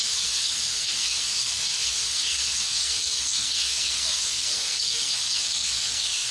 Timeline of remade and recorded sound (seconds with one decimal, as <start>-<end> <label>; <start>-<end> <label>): 0.0-6.3 remade